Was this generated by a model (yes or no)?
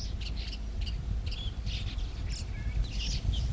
no